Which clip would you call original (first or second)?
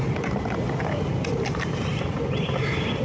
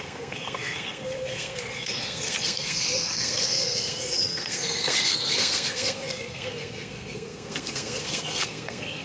first